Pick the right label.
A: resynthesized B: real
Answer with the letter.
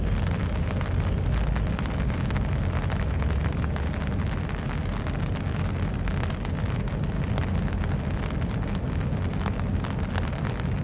B